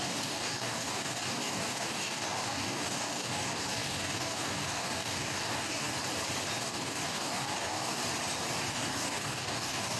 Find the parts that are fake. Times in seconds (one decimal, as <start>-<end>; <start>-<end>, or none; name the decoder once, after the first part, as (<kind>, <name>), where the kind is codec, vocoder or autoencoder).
0.0-5.9 (codec, DAC); 6.6-8.0; 8.7-10.0